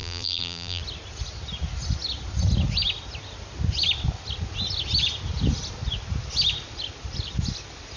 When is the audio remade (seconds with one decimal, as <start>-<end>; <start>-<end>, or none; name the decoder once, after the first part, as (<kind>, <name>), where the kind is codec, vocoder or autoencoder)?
0.0-0.8 (vocoder, BigVGAN v2)